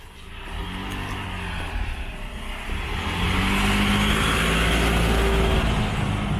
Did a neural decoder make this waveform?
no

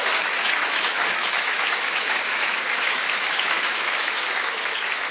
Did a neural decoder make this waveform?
yes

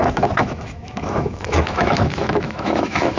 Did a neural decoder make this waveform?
yes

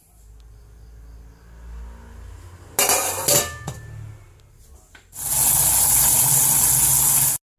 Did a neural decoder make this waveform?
no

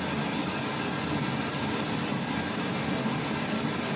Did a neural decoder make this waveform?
no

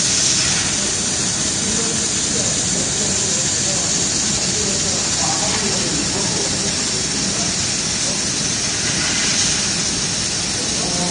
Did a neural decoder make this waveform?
no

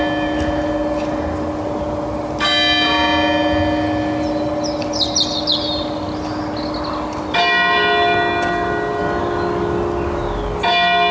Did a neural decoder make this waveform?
no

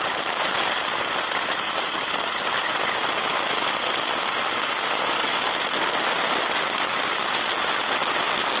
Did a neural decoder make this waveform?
no